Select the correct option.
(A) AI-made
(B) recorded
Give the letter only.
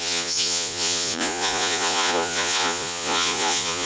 A